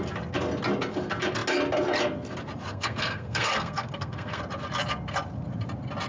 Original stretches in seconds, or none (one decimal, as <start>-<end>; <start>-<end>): 0.0-2.7; 4.4-6.1